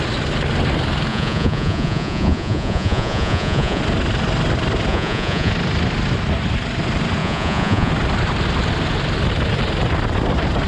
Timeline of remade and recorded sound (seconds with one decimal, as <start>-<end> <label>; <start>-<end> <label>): 0.0-1.1 recorded; 1.1-3.8 remade; 3.8-4.9 recorded; 4.9-5.5 remade; 5.5-7.2 recorded; 7.2-7.9 remade; 7.9-10.7 recorded